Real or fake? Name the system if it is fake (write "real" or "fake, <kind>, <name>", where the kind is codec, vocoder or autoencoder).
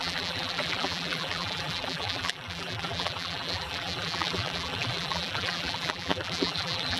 fake, vocoder, BigVGAN v2